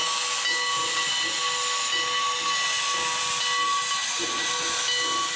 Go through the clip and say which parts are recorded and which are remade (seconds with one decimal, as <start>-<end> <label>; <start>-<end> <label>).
0.0-4.0 recorded; 4.0-4.5 remade; 4.5-5.4 recorded